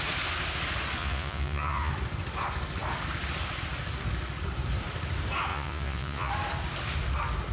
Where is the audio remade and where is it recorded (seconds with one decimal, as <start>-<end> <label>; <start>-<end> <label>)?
0.0-1.0 recorded; 1.0-1.9 remade; 1.9-5.5 recorded; 5.5-6.3 remade; 6.3-7.5 recorded